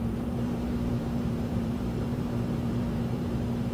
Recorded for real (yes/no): no